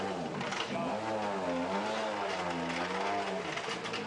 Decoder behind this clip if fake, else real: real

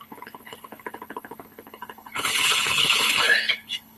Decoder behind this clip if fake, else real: fake, codec, HILCodec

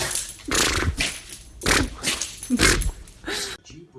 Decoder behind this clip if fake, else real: real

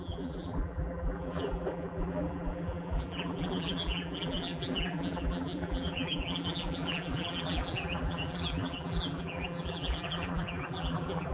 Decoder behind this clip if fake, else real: fake, vocoder, BigVGAN v2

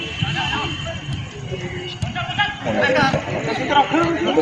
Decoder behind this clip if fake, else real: real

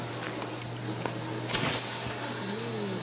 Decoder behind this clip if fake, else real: real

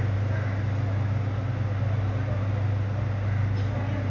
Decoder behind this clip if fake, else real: real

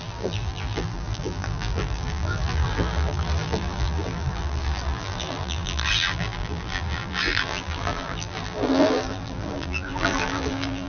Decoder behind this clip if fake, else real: fake, vocoder, BigVGAN v2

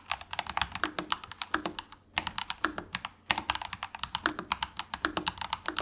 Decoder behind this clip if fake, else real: real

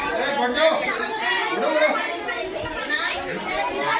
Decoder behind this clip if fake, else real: real